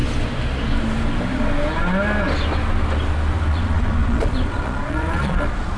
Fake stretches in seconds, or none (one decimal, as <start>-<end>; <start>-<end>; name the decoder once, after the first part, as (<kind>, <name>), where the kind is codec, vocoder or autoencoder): 3.5-5.8 (vocoder, Vocos)